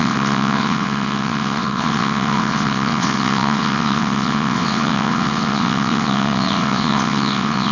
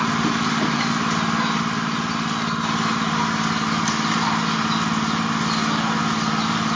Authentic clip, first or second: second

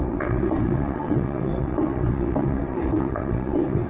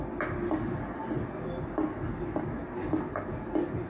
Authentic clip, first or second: second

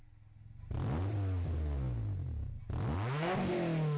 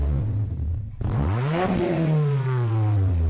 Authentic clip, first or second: first